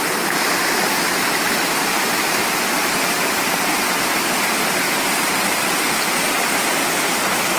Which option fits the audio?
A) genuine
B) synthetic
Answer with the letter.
A